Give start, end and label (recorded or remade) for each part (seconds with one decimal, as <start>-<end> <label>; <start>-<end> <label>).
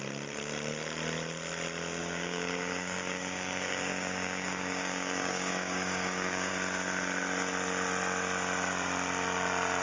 0.0-2.0 recorded; 2.0-6.5 remade; 6.5-9.8 recorded